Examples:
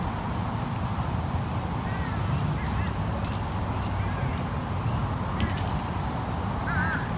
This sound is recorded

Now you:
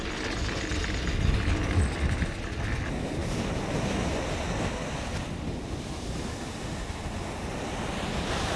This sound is recorded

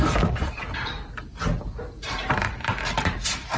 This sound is recorded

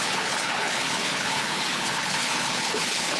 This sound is remade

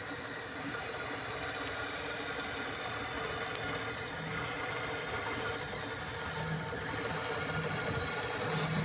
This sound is recorded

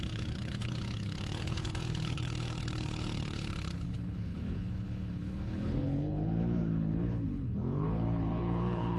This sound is remade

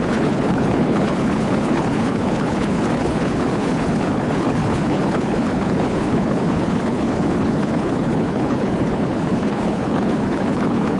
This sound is remade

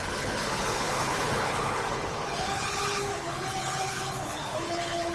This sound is remade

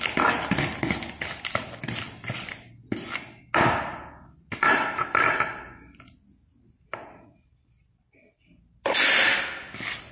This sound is recorded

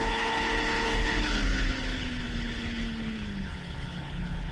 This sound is remade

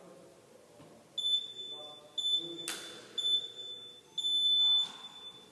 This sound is recorded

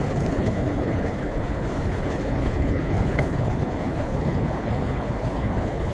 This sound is remade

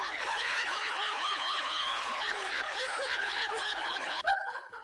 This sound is remade